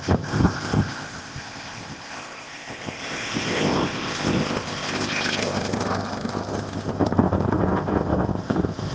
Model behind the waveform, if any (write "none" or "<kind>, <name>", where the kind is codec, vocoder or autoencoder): codec, ZipCodec